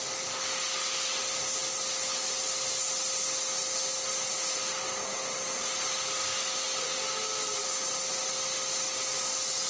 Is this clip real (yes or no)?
yes